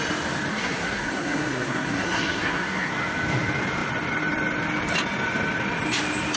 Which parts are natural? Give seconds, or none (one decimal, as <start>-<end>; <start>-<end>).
0.0-0.5; 2.9-6.4